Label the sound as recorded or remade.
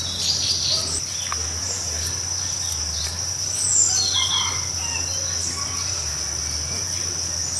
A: recorded